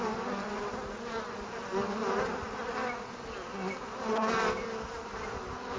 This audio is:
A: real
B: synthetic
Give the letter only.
A